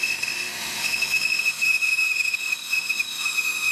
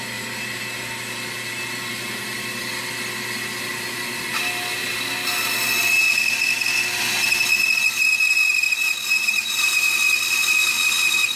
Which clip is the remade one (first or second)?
first